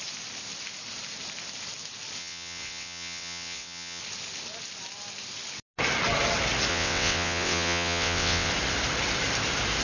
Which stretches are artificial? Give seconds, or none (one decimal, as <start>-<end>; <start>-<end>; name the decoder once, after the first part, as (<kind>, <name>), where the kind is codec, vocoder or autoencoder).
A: 2.2-4.0 (vocoder, WaveNeXt); 6.7-8.5